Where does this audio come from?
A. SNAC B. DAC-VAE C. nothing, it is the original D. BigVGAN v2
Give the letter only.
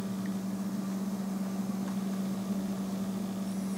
C